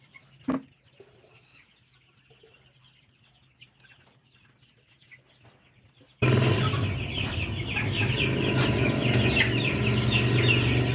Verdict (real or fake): real